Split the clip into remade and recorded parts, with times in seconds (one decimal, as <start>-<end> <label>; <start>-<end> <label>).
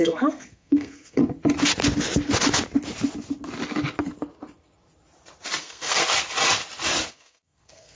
0.0-1.2 remade; 1.2-5.6 recorded; 5.6-6.0 remade; 6.0-7.1 recorded; 7.1-7.9 remade